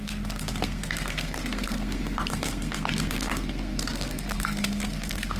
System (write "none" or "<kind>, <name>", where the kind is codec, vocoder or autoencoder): codec, SNAC